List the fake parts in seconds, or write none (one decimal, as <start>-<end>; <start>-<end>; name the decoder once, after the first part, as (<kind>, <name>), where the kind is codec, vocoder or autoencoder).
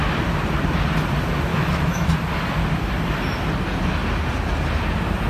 1.5-2.1 (autoencoder, DAC-VAE)